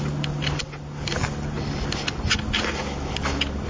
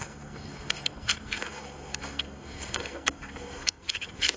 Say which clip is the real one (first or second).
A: first